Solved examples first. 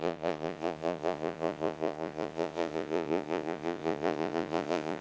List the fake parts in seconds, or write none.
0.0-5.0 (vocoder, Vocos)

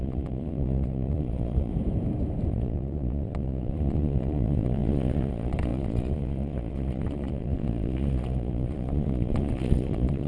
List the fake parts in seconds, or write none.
0.0-1.7 (vocoder, Vocos); 2.5-10.3

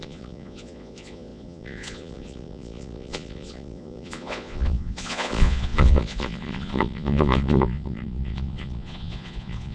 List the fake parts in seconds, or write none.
0.0-9.7 (vocoder, Vocos)